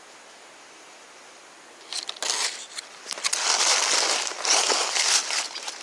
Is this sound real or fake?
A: real